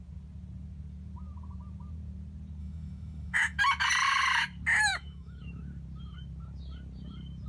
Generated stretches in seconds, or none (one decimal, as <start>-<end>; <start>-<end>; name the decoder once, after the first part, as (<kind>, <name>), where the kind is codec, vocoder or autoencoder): 2.6-3.6 (autoencoder, DAC-VAE); 4.9-5.4